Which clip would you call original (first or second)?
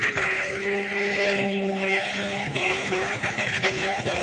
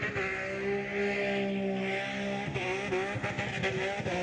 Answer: second